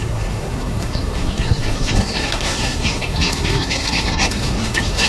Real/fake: fake